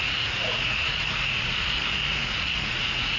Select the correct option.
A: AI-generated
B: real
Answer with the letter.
A